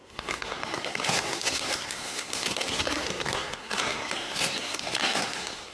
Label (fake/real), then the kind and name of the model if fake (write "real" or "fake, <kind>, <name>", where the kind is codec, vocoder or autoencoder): fake, codec, SNAC